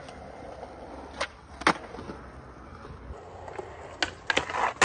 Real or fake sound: real